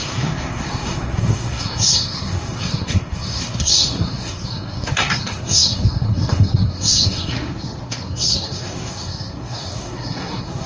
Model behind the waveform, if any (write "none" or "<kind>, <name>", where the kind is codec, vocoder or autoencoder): codec, SNAC